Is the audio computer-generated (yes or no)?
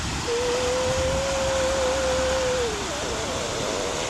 no